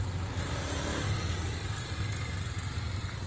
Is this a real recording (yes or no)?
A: yes